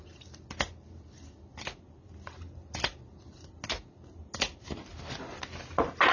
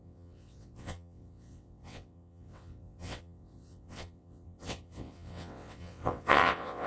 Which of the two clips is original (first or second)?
first